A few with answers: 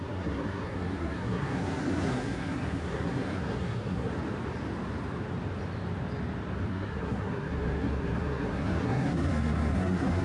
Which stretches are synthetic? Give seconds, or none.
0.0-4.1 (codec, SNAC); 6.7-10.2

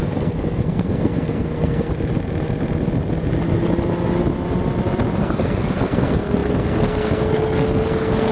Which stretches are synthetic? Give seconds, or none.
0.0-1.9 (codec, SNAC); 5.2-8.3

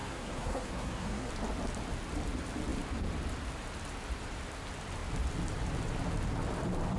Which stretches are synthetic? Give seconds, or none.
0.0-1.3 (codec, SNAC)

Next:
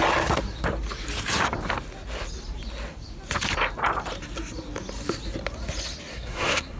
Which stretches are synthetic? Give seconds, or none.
6.1-6.8 (codec, SNAC)

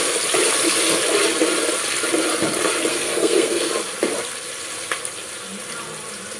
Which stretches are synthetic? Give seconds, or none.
2.9-3.7 (codec, SNAC)

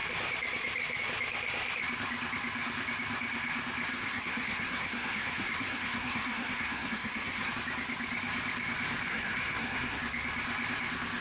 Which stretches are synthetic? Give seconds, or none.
3.9-7.5 (codec, SNAC); 9.1-10.0

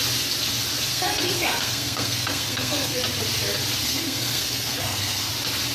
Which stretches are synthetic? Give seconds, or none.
0.9-3.0 (codec, SNAC); 3.8-5.3